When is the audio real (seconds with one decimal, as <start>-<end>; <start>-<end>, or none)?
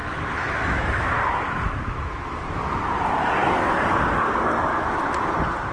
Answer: 2.6-4.7; 5.3-5.7